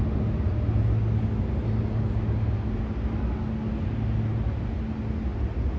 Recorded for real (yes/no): yes